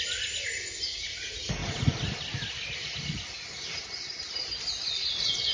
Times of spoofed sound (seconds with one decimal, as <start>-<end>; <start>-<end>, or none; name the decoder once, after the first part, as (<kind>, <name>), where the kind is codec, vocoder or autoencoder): none